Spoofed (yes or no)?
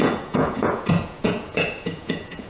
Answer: yes